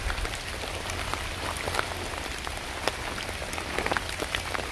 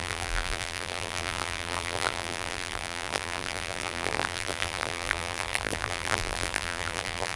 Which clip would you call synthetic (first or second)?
second